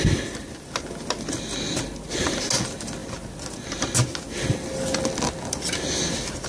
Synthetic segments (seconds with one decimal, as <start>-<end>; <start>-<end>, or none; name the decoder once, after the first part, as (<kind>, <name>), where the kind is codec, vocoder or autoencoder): none